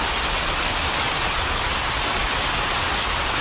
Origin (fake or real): real